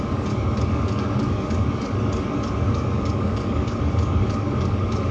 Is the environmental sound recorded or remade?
remade